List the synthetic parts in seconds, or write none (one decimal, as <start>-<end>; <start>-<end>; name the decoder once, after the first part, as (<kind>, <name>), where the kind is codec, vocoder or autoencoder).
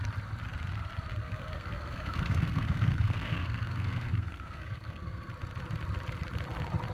1.2-5.3 (codec, SNAC)